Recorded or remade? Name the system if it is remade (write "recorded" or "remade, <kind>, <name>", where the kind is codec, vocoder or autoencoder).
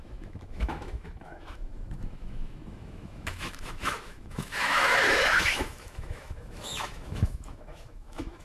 remade, autoencoder, DAC-VAE